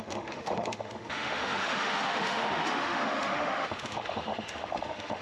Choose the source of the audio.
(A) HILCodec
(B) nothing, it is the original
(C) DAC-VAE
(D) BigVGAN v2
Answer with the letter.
C